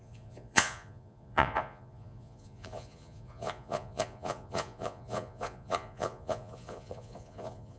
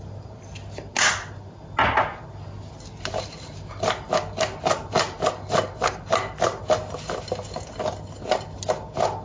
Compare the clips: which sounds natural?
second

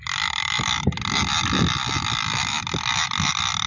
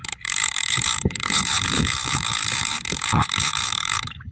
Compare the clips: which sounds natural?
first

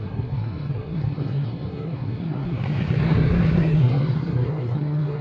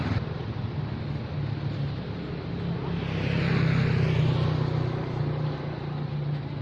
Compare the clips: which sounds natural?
second